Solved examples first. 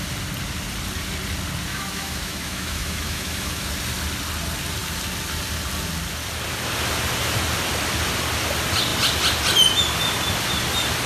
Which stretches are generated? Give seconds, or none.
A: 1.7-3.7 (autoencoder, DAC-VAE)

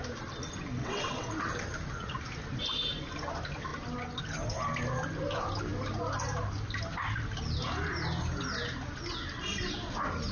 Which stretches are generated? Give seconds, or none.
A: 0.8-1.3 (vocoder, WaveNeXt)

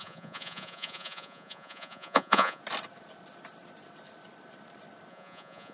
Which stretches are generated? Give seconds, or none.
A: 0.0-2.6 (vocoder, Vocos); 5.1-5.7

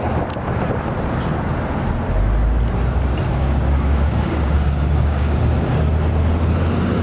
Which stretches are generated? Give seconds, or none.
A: 3.3-5.4 (codec, DAC)

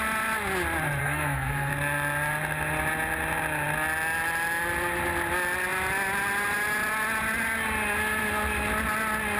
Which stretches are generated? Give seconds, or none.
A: 1.0-1.7 (codec, SNAC)